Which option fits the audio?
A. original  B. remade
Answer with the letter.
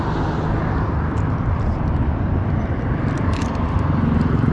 A